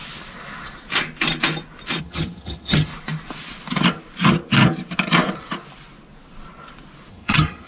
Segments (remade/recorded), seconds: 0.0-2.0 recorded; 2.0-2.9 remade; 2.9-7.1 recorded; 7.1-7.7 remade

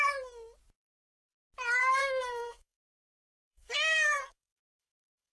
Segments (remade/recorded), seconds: 0.0-1.8 recorded; 1.8-5.3 remade

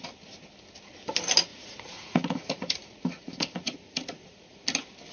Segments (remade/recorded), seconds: 0.0-1.5 recorded; 1.5-4.6 remade; 4.6-5.1 recorded

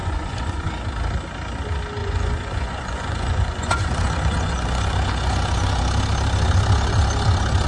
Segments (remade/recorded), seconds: 0.0-0.7 remade; 0.7-2.0 recorded; 2.0-5.8 remade; 5.8-7.7 recorded

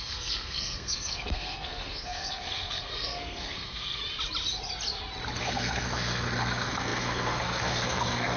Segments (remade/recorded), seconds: 0.0-4.0 remade; 4.0-5.4 recorded; 5.4-8.4 remade